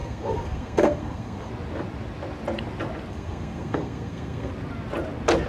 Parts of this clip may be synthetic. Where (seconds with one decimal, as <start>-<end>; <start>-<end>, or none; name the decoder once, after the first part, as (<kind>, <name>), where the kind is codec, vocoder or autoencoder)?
0.0-1.5 (codec, SNAC); 3.1-4.5